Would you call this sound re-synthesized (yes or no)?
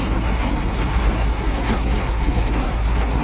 yes